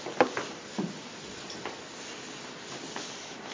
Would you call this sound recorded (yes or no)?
yes